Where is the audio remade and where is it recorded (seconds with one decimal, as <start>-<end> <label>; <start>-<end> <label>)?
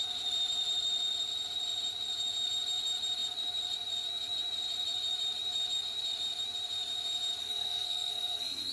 0.0-7.4 recorded; 7.4-8.7 remade